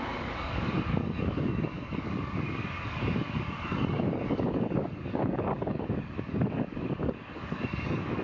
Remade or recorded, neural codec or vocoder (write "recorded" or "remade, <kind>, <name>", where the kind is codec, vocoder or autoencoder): remade, codec, DAC